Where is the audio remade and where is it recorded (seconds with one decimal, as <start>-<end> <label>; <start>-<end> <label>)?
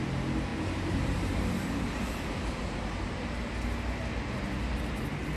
0.0-0.5 recorded; 0.5-3.1 remade; 3.1-5.4 recorded